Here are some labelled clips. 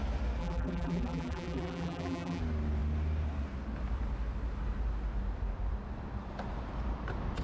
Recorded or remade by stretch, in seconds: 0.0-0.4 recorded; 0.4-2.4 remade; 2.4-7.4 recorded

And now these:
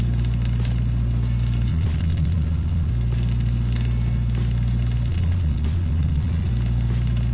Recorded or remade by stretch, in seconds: 0.0-1.7 recorded; 1.7-2.9 remade; 2.9-5.1 recorded; 5.1-6.5 remade; 6.5-7.3 recorded

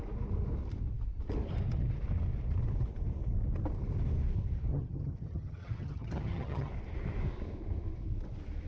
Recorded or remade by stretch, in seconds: 0.0-4.7 recorded; 4.7-6.7 remade; 6.7-8.7 recorded

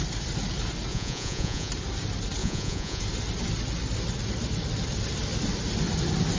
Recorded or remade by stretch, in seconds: 0.0-0.9 recorded; 0.9-1.7 remade; 1.7-2.4 recorded; 2.4-3.0 remade; 3.0-6.4 recorded

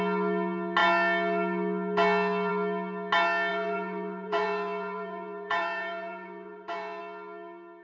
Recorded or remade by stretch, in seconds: 0.0-3.5 recorded; 3.5-7.0 remade; 7.0-7.8 recorded

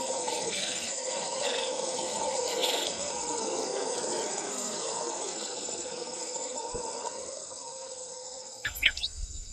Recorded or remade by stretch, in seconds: 0.0-9.5 remade